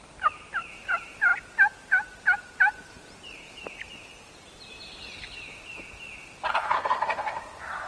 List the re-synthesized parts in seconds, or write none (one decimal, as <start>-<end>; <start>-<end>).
6.5-7.4